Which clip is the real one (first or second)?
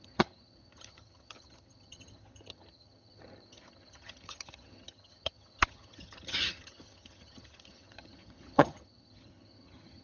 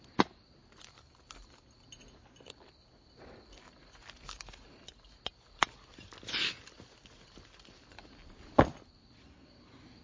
second